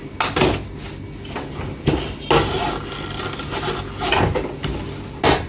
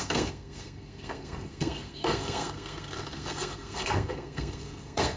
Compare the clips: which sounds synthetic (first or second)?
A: second